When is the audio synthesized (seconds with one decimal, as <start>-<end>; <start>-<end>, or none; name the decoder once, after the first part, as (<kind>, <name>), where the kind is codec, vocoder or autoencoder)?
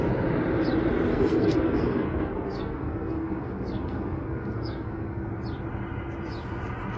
1.1-5.3 (codec, SNAC)